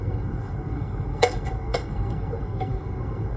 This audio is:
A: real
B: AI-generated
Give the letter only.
B